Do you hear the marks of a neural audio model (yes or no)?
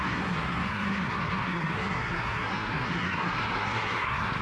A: yes